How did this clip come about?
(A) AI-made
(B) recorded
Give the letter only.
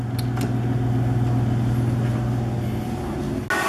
B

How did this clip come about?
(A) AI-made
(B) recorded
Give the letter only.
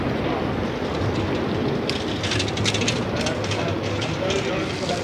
B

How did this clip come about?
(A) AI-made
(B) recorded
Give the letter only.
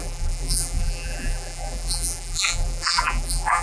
A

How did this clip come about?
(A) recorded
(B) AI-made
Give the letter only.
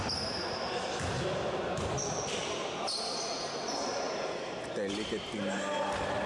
B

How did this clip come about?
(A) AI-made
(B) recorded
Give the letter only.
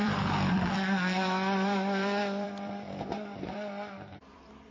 A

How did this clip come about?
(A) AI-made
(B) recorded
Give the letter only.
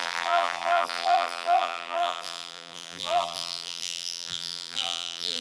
A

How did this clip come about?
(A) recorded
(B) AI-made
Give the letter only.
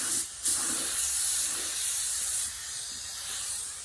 B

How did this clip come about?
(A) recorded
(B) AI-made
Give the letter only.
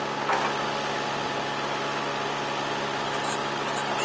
A